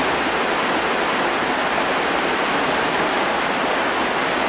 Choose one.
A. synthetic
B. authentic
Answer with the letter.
B